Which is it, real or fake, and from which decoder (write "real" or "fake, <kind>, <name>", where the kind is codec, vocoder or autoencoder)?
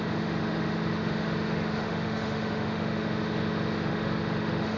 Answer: fake, autoencoder, DAC-VAE